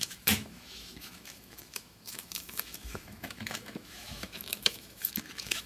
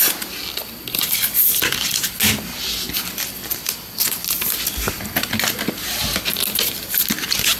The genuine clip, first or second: second